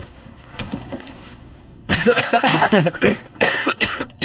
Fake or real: fake